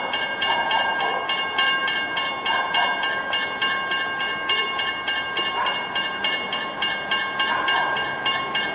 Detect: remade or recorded recorded